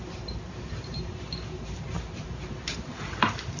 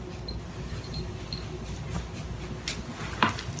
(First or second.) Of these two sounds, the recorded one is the second